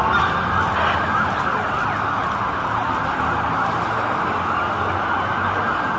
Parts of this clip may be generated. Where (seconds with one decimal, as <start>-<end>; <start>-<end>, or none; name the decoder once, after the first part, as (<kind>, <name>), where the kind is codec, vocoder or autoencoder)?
none